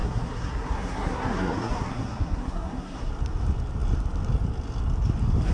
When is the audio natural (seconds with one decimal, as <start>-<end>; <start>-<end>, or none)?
3.1-5.5